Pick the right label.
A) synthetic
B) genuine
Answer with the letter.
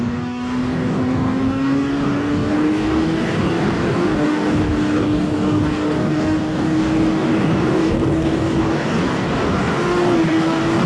A